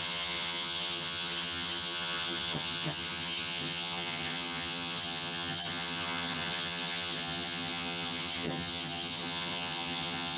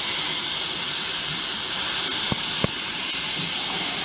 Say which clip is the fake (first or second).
first